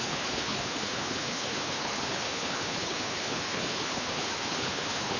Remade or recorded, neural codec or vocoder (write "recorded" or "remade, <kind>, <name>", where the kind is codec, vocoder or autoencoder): remade, codec, HILCodec